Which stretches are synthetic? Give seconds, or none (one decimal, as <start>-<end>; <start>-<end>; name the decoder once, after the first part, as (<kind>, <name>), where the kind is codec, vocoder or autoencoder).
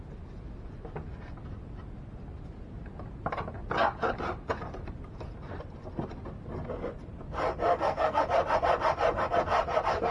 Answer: 7.7-8.2 (codec, SNAC)